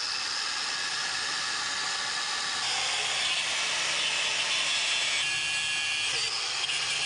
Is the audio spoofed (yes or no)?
no